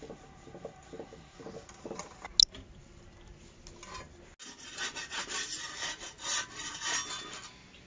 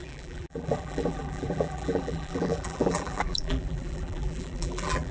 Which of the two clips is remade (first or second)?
second